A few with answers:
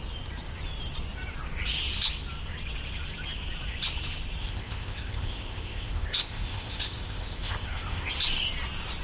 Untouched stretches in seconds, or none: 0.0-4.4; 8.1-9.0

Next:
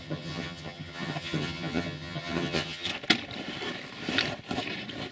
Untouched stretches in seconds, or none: 2.9-5.1